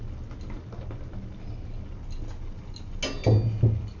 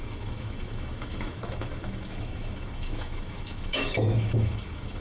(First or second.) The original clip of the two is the first